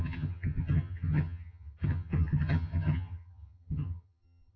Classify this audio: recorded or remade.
remade